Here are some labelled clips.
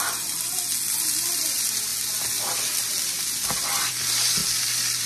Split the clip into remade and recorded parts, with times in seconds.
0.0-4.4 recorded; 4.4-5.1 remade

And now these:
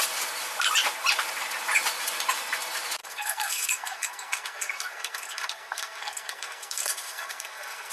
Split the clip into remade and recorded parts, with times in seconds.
0.0-3.0 recorded; 3.0-7.9 remade

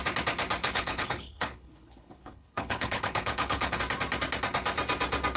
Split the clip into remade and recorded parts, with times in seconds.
0.0-0.6 recorded; 0.6-3.8 remade; 3.8-5.4 recorded

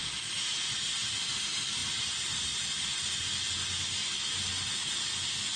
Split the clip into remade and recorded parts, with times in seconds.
0.0-5.6 recorded

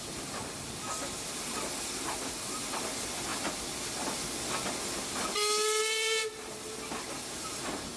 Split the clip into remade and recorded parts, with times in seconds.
0.0-8.0 recorded

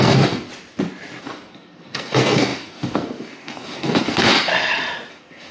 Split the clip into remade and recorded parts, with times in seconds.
0.0-0.5 remade; 0.5-1.2 recorded; 1.2-4.5 remade; 4.5-5.1 recorded; 5.1-5.5 remade